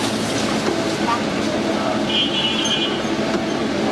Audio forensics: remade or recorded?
recorded